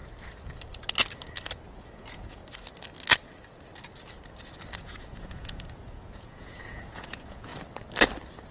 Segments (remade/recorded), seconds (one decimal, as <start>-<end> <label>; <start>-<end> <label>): 0.0-1.7 recorded; 1.7-2.4 remade; 2.4-4.8 recorded; 4.8-7.5 remade; 7.5-8.5 recorded

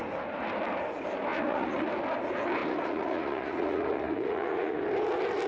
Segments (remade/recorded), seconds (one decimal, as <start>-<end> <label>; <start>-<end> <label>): 0.0-1.3 recorded; 1.3-1.9 remade; 1.9-2.6 recorded; 2.6-4.8 remade; 4.8-5.5 recorded

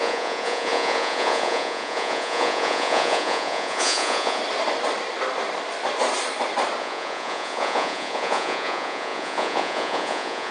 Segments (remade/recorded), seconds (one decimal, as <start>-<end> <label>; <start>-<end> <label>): 0.0-4.4 remade; 4.4-6.8 recorded; 6.8-10.5 remade

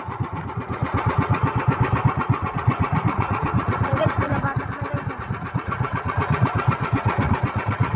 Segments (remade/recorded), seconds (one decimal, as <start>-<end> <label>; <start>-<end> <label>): 0.0-1.4 remade; 1.4-2.1 recorded; 2.1-4.3 remade; 4.3-5.2 recorded; 5.2-8.0 remade

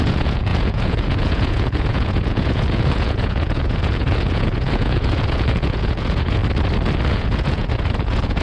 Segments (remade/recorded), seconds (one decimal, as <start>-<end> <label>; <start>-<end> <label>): 0.0-6.4 remade; 6.4-7.1 recorded; 7.1-8.4 remade

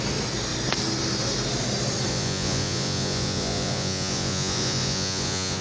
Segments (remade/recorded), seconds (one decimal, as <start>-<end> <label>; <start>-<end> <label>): 0.0-2.1 recorded; 2.1-5.6 remade

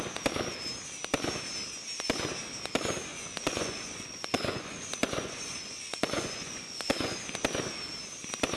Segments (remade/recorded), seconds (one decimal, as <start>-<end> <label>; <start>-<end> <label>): 0.0-3.1 recorded; 3.1-7.2 remade; 7.2-8.6 recorded